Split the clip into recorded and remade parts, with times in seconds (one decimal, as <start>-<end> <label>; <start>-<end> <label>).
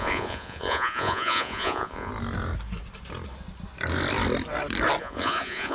0.0-2.1 remade; 2.1-5.0 recorded; 5.0-5.7 remade